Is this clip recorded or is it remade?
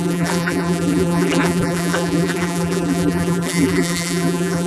remade